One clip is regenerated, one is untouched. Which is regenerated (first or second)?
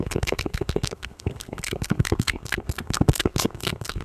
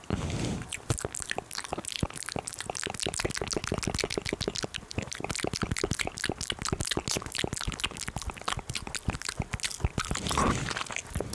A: first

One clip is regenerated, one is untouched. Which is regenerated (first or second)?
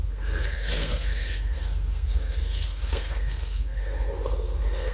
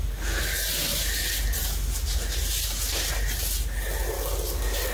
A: first